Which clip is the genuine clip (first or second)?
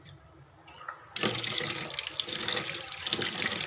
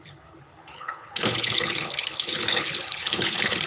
first